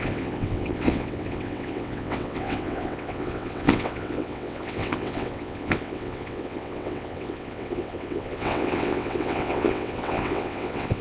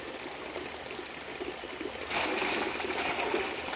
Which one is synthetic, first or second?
first